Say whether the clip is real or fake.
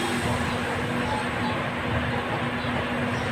real